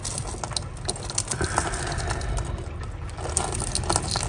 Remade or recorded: recorded